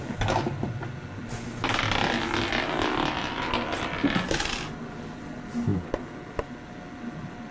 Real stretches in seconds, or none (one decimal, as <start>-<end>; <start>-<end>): 0.0-7.5